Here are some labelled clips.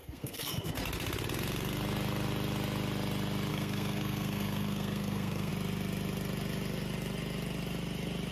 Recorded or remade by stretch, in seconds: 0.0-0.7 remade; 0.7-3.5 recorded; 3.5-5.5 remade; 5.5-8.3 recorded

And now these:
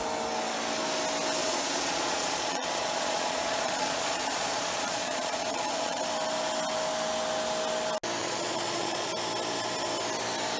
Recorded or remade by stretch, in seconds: 0.0-1.4 recorded; 1.4-6.0 remade; 6.0-8.2 recorded; 8.2-9.1 remade; 9.1-10.6 recorded

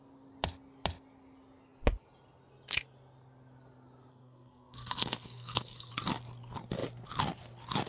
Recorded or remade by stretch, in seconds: 0.0-4.1 recorded; 4.1-5.9 remade; 5.9-7.9 recorded

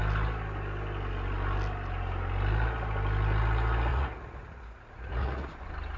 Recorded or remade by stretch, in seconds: 0.0-3.9 recorded; 3.9-5.5 remade; 5.5-6.0 recorded

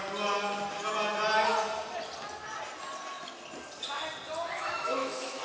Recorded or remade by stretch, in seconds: 0.0-4.5 recorded; 4.5-5.4 remade

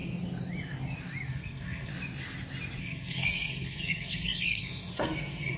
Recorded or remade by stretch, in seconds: 0.0-1.3 recorded; 1.3-1.9 remade; 1.9-2.8 recorded; 2.8-5.6 remade